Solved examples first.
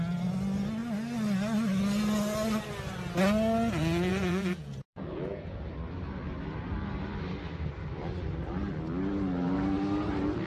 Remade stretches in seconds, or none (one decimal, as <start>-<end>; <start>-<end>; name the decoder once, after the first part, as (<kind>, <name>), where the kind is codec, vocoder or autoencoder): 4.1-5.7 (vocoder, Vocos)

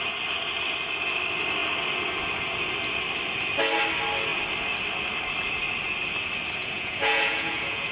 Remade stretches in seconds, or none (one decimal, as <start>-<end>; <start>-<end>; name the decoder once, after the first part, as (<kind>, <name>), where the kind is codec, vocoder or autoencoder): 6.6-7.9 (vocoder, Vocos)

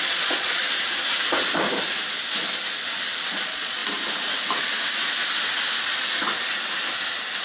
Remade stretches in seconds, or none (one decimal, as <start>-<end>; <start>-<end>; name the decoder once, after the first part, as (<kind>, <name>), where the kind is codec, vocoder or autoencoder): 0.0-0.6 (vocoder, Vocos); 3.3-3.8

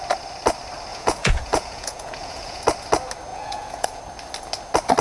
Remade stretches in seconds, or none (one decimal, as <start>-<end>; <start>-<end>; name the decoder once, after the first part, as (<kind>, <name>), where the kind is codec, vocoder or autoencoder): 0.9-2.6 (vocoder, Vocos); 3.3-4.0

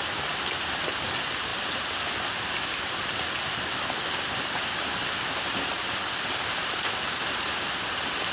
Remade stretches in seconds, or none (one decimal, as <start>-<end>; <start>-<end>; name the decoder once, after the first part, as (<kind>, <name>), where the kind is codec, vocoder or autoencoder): none

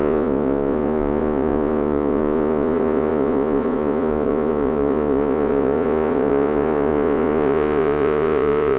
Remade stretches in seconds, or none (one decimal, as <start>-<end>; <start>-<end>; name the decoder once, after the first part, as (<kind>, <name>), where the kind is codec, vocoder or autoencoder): 0.0-8.8 (vocoder, Vocos)